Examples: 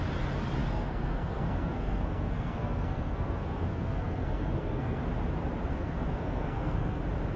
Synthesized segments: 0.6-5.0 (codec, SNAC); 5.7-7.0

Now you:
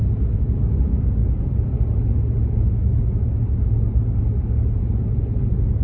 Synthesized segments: none

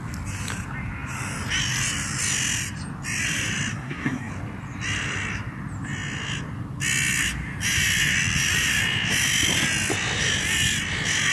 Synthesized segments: 3.7-4.3 (codec, SNAC)